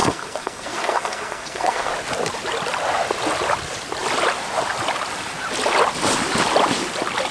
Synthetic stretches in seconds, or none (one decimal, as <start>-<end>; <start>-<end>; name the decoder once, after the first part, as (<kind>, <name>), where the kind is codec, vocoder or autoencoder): 0.0-1.9 (codec, SNAC)